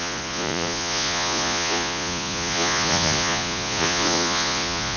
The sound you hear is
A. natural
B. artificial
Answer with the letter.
B